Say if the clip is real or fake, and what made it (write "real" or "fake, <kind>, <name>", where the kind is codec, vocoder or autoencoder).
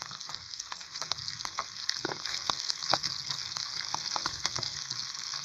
fake, codec, SNAC